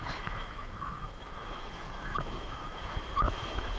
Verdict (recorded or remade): remade